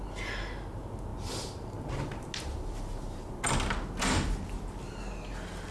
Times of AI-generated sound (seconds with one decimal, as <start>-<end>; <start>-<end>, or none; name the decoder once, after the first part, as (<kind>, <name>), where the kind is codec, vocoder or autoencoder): none